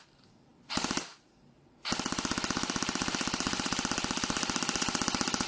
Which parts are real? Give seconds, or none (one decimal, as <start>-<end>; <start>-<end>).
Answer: 0.0-5.5